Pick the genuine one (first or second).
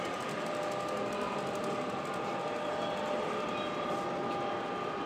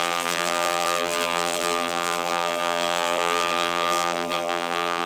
first